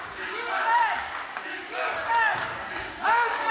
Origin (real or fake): fake